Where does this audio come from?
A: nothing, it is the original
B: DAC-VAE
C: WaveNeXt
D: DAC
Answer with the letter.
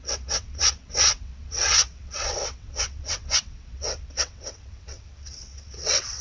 C